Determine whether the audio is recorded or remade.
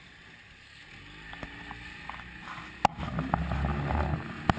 recorded